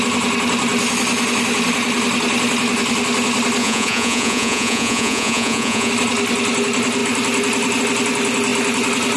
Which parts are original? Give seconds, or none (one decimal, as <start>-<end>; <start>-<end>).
0.0-3.6; 5.9-9.2